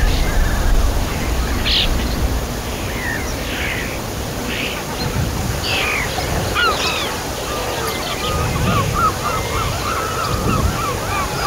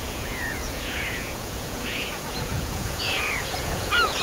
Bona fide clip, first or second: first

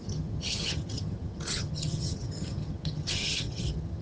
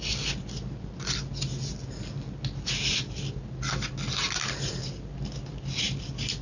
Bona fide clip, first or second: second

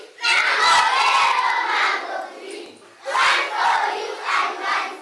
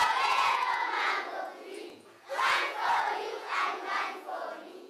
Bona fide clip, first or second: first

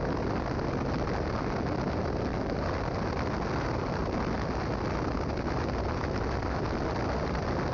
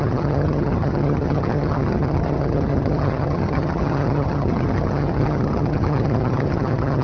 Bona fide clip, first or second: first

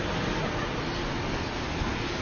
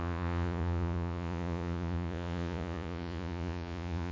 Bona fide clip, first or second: first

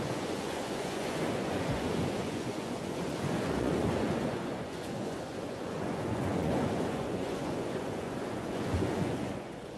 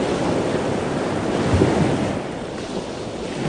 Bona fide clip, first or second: second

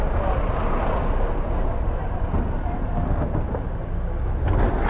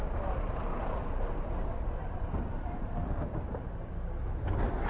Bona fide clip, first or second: first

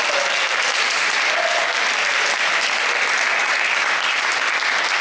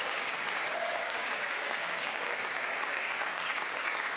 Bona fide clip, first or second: first